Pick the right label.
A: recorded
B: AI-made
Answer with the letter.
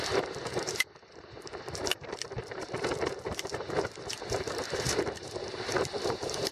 B